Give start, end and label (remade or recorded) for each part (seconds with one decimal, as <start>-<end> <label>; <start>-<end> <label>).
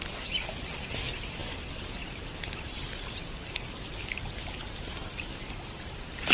0.0-1.4 recorded; 1.4-3.5 remade; 3.5-6.3 recorded